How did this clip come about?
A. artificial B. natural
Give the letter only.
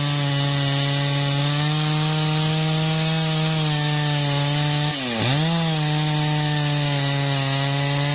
B